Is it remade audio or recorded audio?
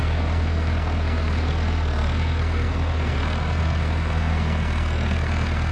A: remade